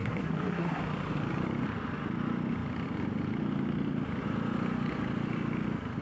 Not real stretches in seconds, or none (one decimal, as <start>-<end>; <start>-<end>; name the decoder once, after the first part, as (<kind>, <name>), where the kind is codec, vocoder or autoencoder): 0.0-0.8 (codec, SNAC)